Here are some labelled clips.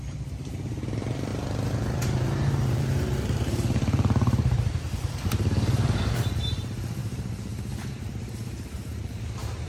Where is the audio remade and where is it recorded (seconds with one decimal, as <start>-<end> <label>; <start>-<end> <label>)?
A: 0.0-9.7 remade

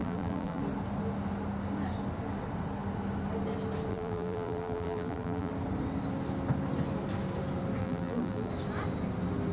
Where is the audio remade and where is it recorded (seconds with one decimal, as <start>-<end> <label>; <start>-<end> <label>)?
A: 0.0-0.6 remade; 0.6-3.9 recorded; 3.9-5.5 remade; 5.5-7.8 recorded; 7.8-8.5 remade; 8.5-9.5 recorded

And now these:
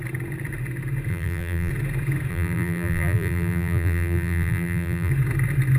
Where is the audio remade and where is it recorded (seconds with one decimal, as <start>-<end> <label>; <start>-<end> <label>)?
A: 0.0-1.1 recorded; 1.1-1.7 remade; 1.7-2.3 recorded; 2.3-5.1 remade; 5.1-5.8 recorded

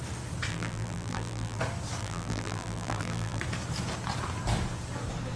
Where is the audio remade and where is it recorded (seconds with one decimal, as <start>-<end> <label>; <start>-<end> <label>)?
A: 0.0-0.5 recorded; 0.5-1.6 remade; 1.6-2.0 recorded; 2.0-3.4 remade; 3.4-5.4 recorded

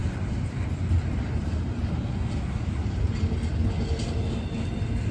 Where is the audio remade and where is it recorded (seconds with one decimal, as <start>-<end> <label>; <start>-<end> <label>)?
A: 0.0-1.8 remade; 1.8-5.1 recorded